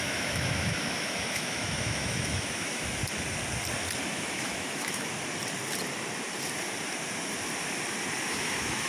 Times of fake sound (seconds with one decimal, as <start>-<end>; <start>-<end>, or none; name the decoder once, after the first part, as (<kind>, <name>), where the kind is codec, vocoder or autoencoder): 0.0-3.0 (autoencoder, DAC-VAE); 4.0-5.1; 8.2-8.9